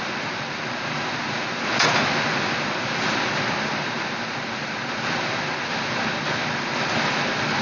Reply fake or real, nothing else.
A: real